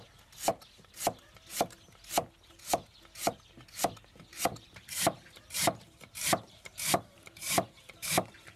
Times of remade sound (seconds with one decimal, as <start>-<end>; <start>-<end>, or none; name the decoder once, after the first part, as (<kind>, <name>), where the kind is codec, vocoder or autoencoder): 4.3-8.6 (vocoder, BigVGAN v2)